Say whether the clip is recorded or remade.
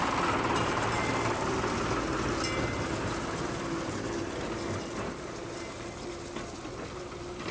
recorded